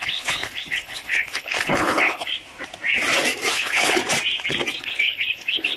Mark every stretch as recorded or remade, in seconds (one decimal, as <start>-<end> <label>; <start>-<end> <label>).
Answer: 0.0-2.3 remade; 2.3-3.5 recorded; 3.5-4.0 remade; 4.0-4.8 recorded; 4.8-5.8 remade

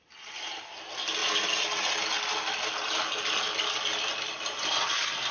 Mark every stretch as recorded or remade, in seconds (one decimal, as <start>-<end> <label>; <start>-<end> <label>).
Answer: 0.0-5.3 recorded

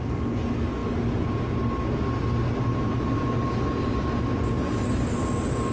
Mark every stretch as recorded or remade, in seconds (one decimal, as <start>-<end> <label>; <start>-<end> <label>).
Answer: 0.0-5.7 recorded

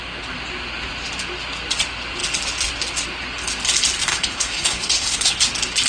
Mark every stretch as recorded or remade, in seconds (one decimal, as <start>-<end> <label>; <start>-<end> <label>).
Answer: 0.0-4.1 recorded; 4.1-5.4 remade; 5.4-5.9 recorded

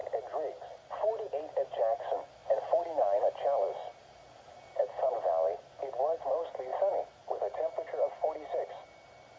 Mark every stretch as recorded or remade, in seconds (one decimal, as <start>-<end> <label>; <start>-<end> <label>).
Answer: 0.0-0.9 remade; 0.9-2.4 recorded; 2.4-4.0 remade; 4.0-9.4 recorded

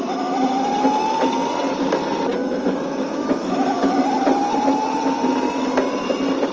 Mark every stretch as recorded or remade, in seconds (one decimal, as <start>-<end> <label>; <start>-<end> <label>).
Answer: 0.0-2.4 recorded; 2.4-4.0 remade; 4.0-6.5 recorded

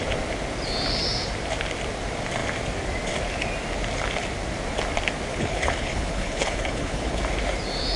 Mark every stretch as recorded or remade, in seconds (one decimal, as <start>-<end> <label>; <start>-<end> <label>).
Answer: 0.0-5.3 recorded; 5.3-7.2 remade; 7.2-8.0 recorded

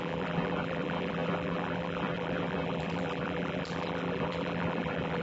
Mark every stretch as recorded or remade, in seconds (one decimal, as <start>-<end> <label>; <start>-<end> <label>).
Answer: 0.0-5.2 remade